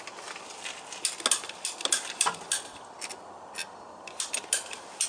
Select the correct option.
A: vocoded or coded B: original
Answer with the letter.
B